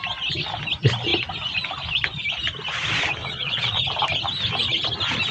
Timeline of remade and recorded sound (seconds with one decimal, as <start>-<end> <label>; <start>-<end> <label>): 0.0-3.2 recorded; 3.2-3.8 remade; 3.8-5.3 recorded